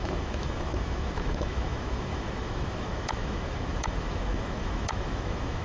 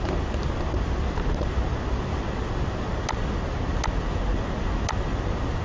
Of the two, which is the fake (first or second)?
first